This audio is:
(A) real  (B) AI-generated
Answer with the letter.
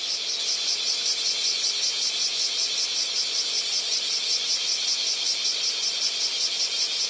A